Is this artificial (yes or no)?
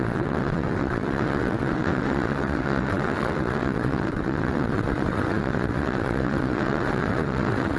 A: yes